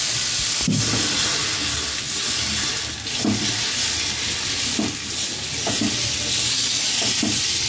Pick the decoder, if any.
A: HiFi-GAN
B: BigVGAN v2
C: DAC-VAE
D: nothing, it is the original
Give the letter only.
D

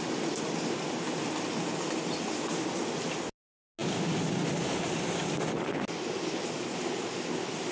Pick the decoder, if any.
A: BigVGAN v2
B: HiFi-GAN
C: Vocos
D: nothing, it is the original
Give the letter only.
D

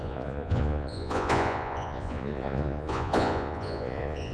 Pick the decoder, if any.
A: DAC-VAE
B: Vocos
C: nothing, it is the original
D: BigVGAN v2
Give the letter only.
B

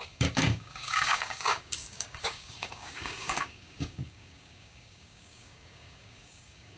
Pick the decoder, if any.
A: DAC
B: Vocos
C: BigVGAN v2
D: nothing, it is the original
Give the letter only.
A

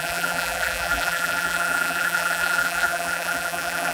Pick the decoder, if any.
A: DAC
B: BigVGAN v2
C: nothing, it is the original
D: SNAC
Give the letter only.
B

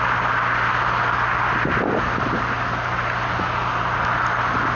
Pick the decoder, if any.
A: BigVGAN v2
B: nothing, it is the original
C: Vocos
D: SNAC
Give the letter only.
B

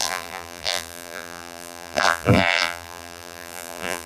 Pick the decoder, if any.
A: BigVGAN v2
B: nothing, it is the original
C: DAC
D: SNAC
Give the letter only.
A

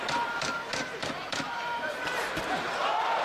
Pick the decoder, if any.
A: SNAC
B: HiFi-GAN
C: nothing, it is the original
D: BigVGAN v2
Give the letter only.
D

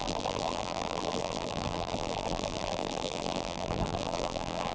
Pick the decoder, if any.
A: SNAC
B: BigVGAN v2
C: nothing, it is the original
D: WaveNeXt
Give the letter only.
B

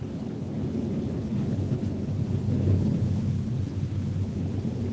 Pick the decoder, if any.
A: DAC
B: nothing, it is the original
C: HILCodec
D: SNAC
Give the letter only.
C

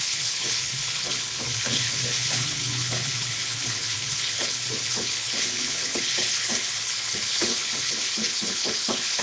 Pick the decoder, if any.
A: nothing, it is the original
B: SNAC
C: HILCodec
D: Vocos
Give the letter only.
C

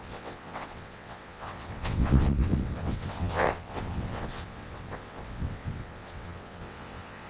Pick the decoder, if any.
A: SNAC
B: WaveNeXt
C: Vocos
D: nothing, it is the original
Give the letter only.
B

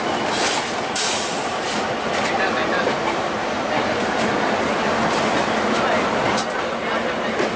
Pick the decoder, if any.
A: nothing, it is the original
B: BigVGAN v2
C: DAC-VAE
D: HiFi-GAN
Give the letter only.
A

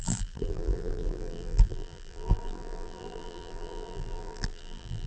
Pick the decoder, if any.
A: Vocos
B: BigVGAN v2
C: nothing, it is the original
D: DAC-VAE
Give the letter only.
B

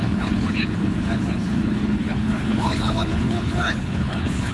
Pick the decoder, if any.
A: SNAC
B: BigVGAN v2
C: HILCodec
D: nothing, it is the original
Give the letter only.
C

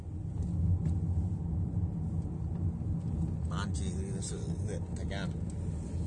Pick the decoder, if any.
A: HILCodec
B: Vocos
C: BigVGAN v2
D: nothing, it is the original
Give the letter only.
D